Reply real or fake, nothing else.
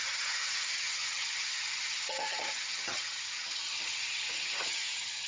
fake